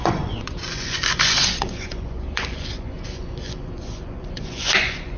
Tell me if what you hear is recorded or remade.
remade